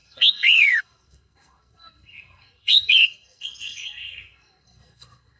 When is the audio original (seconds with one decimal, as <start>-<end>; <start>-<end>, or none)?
none

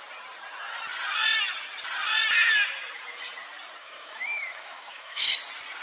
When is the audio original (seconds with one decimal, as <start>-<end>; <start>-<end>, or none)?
0.0-3.8; 5.3-5.8

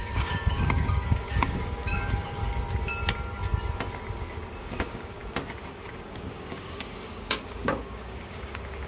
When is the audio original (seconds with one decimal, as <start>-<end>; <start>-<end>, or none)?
2.4-4.6; 5.2-5.7

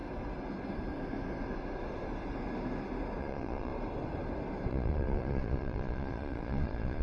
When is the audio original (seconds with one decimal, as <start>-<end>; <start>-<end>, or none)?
0.0-3.2; 3.7-4.7

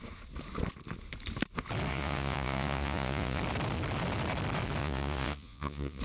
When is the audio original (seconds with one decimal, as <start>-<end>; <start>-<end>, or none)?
0.0-1.9; 3.4-4.8

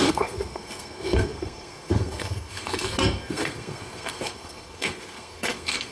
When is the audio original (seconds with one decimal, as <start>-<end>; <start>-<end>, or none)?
none

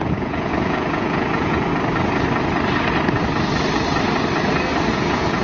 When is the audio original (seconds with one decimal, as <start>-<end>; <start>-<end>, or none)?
1.7-4.9